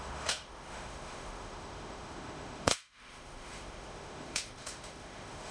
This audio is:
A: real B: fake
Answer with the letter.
B